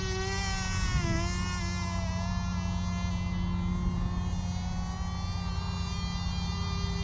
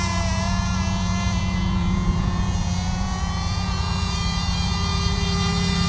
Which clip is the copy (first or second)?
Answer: second